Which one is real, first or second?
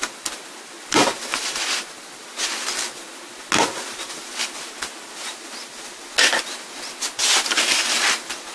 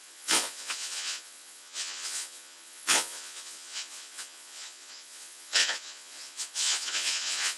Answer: first